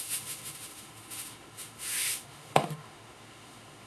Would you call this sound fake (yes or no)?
yes